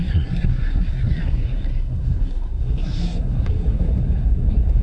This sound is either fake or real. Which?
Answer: fake